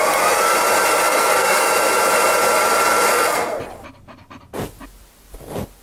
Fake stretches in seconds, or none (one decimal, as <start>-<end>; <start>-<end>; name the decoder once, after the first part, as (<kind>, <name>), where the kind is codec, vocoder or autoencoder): 1.0-1.7 (codec, SNAC); 3.1-3.6